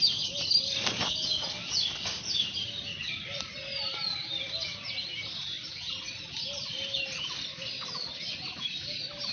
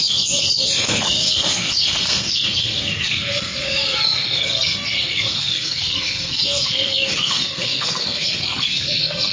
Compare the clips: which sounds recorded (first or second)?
first